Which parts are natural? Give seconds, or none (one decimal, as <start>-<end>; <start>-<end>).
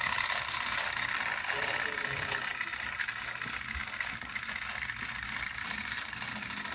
0.0-6.7